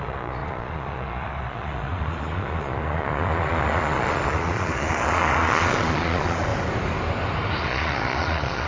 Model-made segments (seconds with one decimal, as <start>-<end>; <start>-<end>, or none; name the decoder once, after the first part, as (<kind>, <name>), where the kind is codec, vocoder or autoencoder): 0.0-6.5 (vocoder, Vocos); 7.6-8.7